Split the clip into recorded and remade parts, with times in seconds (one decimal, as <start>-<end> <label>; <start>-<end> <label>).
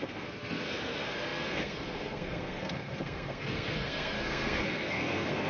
0.0-5.5 remade